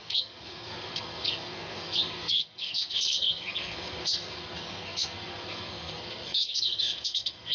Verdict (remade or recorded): remade